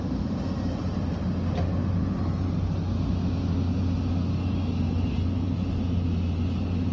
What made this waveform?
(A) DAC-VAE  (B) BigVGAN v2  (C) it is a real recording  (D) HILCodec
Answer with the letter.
C